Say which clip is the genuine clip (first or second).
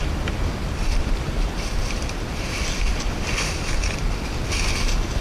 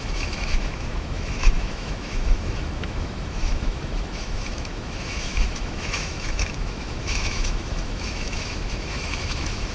first